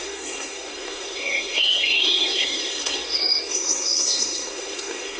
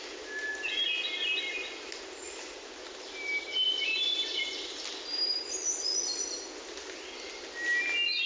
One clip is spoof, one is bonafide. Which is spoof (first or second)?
first